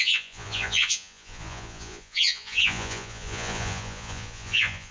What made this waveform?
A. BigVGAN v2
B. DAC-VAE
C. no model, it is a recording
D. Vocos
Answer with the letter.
D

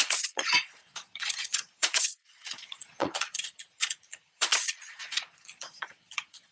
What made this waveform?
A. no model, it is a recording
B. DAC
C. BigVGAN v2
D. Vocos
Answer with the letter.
D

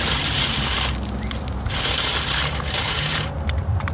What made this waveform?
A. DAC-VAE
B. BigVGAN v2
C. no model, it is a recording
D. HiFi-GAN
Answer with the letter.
B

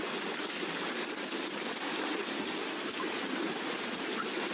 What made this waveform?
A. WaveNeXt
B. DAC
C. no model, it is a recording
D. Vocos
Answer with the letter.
C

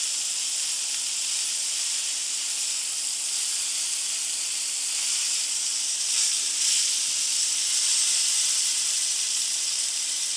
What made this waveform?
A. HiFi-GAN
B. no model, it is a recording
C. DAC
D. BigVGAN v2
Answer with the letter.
D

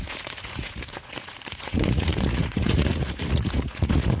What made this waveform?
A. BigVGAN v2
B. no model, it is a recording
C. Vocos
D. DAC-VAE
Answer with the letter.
C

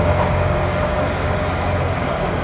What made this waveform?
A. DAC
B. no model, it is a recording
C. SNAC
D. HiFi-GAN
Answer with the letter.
A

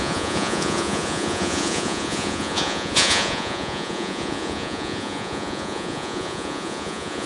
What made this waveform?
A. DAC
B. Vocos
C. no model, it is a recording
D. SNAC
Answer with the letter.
B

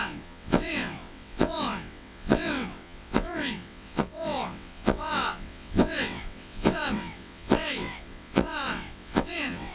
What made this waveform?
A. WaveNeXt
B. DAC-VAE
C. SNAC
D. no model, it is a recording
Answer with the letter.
A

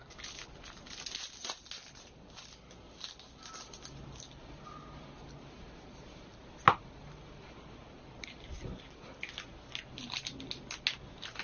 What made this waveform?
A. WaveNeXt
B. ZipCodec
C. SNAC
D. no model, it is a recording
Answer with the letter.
D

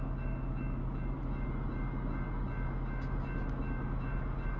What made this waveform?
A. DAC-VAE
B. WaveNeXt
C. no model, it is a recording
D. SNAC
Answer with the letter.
A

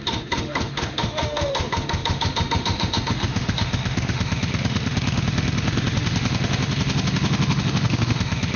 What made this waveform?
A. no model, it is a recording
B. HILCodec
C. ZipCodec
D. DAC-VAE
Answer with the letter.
D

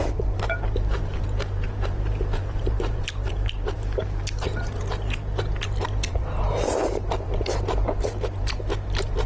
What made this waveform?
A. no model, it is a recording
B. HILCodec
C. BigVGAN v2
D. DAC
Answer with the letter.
C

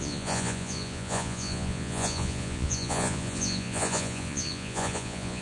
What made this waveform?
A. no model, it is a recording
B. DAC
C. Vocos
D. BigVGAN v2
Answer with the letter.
C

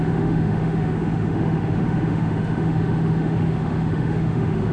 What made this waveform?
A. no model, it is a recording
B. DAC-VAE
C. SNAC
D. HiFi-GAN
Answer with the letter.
B